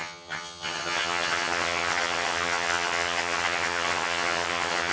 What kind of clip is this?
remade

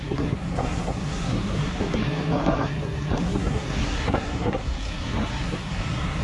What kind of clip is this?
remade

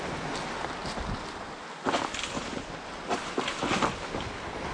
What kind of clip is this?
recorded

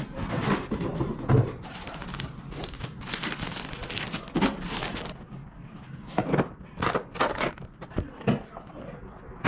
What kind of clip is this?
recorded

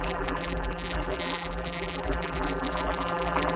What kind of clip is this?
remade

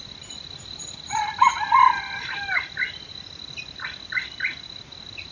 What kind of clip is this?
recorded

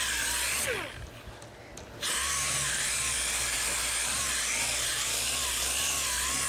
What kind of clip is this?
recorded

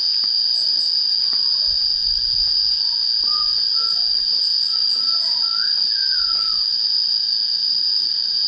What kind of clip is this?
recorded